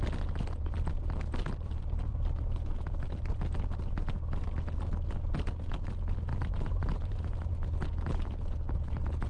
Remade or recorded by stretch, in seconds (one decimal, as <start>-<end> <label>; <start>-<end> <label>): 0.0-6.3 recorded; 6.3-7.5 remade; 7.5-9.3 recorded